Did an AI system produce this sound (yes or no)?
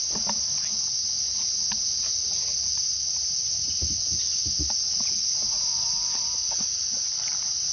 no